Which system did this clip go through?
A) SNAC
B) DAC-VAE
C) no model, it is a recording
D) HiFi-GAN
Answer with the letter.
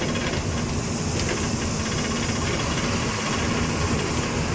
C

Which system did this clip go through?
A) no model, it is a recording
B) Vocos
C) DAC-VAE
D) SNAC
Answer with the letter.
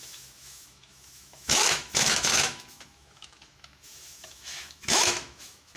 C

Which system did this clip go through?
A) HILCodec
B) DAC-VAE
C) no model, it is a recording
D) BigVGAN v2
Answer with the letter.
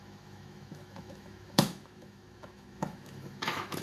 B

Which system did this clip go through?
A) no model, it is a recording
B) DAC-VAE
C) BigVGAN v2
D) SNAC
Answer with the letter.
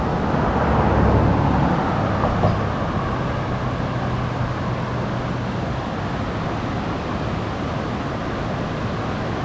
A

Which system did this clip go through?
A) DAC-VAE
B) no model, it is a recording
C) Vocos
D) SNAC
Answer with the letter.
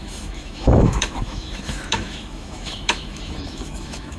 A